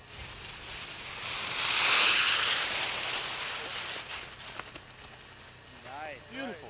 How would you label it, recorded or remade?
recorded